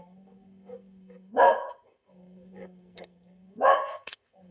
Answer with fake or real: fake